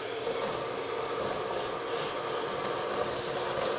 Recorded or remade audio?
recorded